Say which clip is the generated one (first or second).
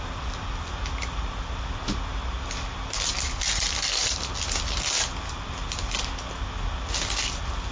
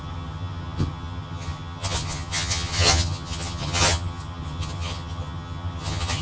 second